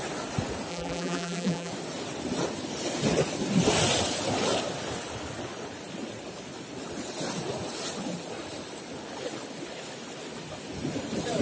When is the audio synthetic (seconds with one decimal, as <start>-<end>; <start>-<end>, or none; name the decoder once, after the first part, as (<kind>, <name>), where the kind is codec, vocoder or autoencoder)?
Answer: 0.7-1.7 (vocoder, BigVGAN v2)